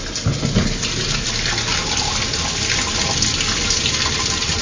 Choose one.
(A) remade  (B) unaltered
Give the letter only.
B